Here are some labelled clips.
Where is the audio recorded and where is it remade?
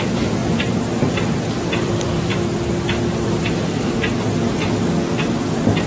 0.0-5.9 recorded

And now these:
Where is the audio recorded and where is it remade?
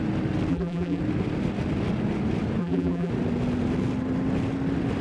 0.0-0.5 recorded; 0.5-1.0 remade; 1.0-2.6 recorded; 2.6-3.1 remade; 3.1-5.0 recorded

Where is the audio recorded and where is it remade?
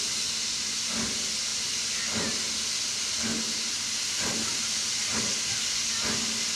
0.0-6.6 recorded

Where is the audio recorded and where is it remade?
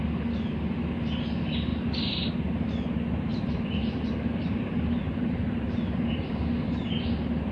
0.0-3.3 recorded; 3.3-6.1 remade; 6.1-7.5 recorded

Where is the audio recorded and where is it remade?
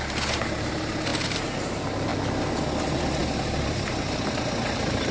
0.0-2.1 remade; 2.1-2.8 recorded; 2.8-5.1 remade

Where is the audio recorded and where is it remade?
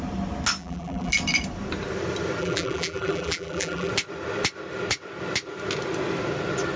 0.0-0.6 recorded; 0.6-1.1 remade; 1.1-2.4 recorded; 2.4-3.9 remade; 3.9-6.8 recorded